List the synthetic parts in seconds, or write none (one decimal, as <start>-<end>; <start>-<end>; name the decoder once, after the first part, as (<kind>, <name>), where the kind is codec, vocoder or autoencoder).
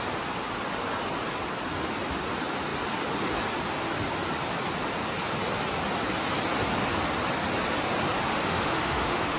8.3-9.4 (autoencoder, DAC-VAE)